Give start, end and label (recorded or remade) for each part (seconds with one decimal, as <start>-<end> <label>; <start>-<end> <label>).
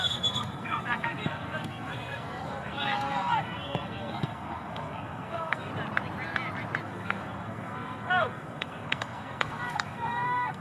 0.0-5.7 remade; 5.7-6.8 recorded; 6.8-10.6 remade